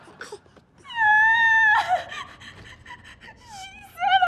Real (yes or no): yes